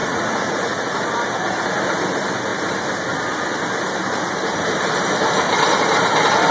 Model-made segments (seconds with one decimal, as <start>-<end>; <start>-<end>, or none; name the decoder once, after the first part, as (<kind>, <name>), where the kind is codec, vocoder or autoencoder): 0.0-0.8 (vocoder, Vocos)